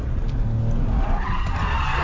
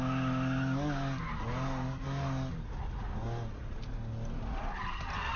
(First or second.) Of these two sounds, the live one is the second